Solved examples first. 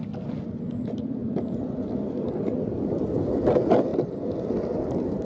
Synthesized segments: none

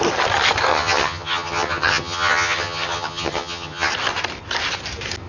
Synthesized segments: 0.7-3.9

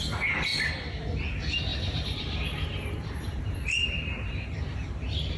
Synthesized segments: 1.7-4.9

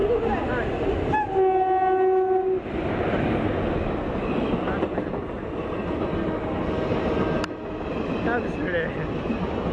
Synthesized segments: none

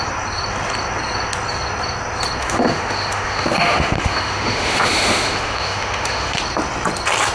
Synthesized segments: 2.4-6.4

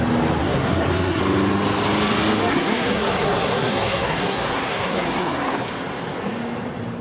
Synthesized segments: 0.4-1.2; 2.5-5.7